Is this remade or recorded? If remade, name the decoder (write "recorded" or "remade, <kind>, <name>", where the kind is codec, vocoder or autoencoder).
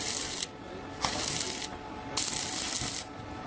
recorded